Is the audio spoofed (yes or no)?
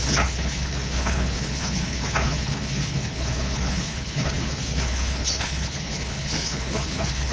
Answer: yes